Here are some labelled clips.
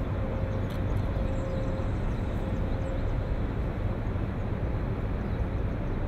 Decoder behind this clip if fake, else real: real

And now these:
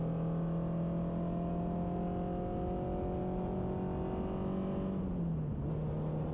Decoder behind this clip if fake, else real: real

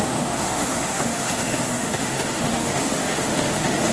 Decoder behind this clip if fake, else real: fake, autoencoder, DAC-VAE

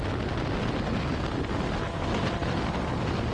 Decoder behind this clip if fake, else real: real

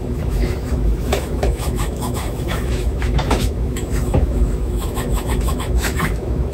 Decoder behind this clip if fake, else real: fake, autoencoder, DAC-VAE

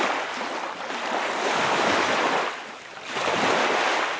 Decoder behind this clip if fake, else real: real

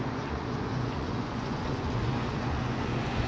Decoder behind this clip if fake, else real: fake, vocoder, Vocos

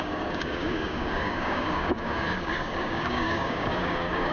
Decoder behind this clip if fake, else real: fake, codec, DAC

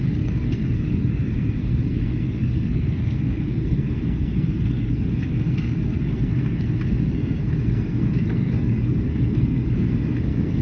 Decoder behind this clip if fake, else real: fake, codec, SNAC